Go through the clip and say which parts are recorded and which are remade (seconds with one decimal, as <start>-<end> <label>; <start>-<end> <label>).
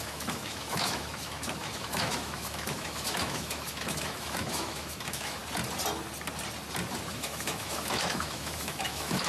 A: 0.0-5.4 remade; 5.4-7.1 recorded; 7.1-9.3 remade